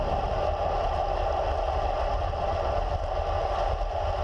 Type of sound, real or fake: real